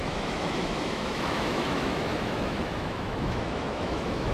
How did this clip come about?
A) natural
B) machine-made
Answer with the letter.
B